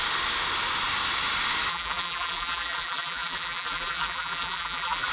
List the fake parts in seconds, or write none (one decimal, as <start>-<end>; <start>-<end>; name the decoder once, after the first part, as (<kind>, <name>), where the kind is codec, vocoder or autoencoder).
1.7-5.1 (vocoder, BigVGAN v2)